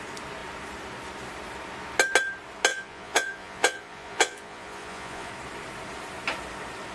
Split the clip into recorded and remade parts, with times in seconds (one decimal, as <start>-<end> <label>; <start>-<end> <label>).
0.0-2.7 recorded; 2.7-5.3 remade; 5.3-6.9 recorded